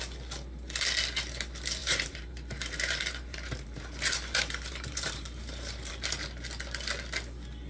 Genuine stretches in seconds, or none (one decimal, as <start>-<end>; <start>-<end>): 0.0-1.8; 5.9-7.7